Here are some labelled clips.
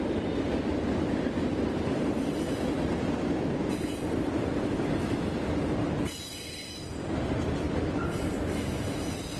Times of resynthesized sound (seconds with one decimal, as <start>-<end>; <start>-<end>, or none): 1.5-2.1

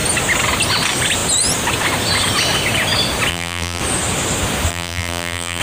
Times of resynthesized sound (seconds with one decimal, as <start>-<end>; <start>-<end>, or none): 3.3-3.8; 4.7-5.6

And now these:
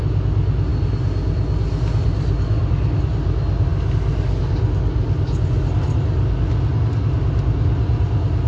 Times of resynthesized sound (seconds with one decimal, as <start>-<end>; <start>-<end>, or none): none

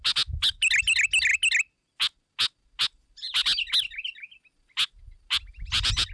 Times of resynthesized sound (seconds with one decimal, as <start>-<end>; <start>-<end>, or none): none